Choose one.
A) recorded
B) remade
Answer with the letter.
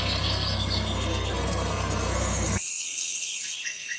B